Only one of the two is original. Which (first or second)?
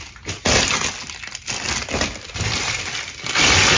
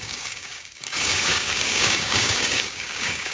first